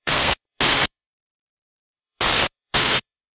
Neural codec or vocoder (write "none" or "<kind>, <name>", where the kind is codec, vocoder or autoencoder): codec, SNAC